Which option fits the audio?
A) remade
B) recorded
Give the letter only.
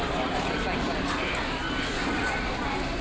B